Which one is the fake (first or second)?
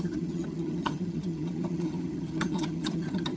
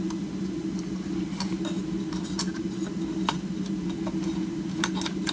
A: first